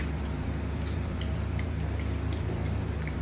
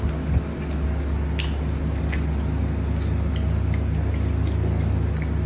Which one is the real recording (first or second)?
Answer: second